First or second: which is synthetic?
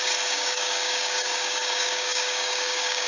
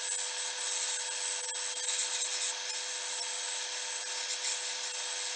first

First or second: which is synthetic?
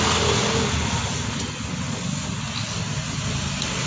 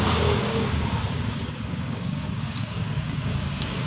second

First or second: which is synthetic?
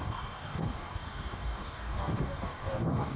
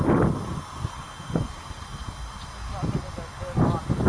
first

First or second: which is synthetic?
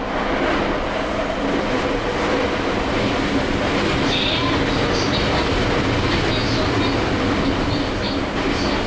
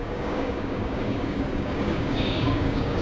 second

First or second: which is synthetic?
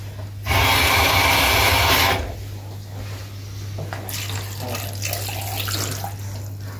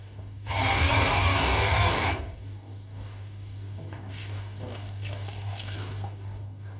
second